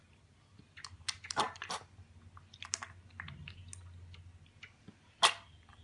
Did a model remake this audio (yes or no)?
no